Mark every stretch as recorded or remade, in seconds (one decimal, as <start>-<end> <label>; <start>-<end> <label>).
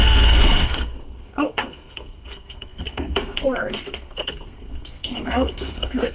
0.0-6.1 remade